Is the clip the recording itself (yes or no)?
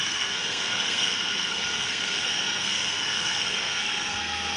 no